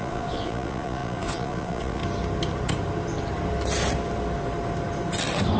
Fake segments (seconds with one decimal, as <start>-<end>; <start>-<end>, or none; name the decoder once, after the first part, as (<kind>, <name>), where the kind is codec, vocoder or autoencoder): 0.0-2.0 (vocoder, Vocos)